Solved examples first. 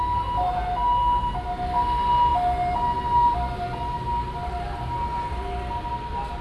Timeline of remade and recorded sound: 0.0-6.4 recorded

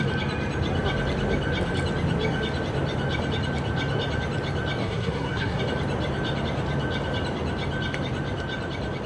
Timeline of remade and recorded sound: 0.0-4.8 recorded; 4.8-5.6 remade; 5.6-9.1 recorded

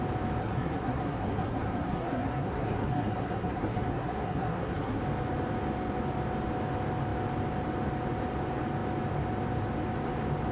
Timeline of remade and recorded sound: 0.0-0.4 recorded; 0.4-5.0 remade; 5.0-10.5 recorded

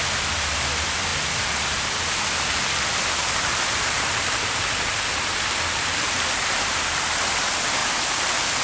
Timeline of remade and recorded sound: 0.0-8.6 recorded

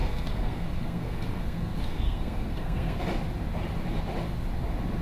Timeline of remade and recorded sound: 0.0-3.0 remade; 3.0-5.0 recorded

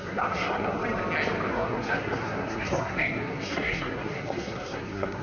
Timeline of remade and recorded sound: 0.0-0.8 remade; 0.8-1.5 recorded; 1.5-5.2 remade

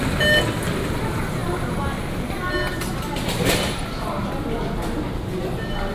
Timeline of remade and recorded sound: 0.0-5.9 recorded

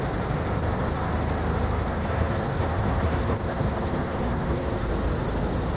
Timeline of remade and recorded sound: 0.0-1.9 recorded; 1.9-4.9 remade; 4.9-5.8 recorded